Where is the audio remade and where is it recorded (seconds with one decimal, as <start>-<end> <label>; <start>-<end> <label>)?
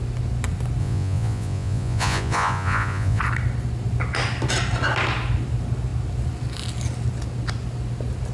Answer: 0.0-0.8 recorded; 0.8-3.2 remade; 3.2-8.3 recorded